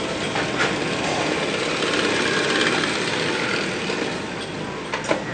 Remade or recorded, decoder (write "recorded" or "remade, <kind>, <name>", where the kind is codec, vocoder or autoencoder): recorded